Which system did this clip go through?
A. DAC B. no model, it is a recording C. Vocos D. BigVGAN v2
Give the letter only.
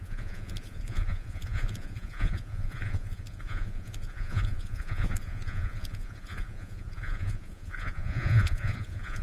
C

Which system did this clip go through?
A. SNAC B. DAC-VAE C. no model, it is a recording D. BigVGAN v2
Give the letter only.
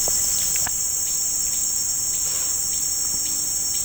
C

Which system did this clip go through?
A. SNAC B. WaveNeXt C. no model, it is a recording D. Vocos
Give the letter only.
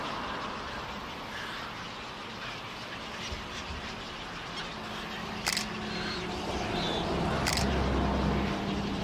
C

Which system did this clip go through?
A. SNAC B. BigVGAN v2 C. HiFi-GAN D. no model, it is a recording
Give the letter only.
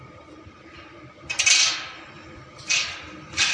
B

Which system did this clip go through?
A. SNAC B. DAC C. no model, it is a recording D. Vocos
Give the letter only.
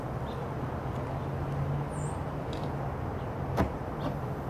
C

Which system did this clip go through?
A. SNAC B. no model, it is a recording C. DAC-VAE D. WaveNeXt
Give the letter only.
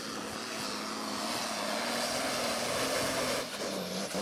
B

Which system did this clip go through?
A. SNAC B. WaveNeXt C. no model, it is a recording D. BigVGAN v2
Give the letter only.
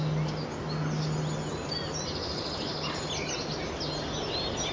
C